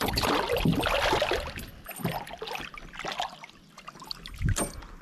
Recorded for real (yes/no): yes